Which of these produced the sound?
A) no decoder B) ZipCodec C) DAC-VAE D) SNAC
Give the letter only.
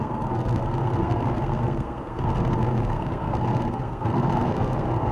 D